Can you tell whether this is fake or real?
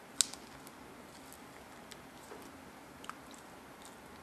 real